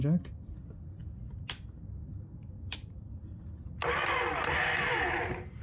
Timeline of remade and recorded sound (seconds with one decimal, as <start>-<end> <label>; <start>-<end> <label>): 0.0-5.6 recorded